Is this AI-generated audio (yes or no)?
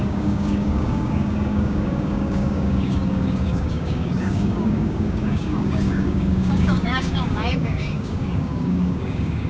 yes